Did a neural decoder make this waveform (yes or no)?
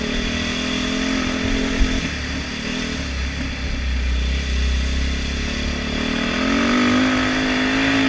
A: no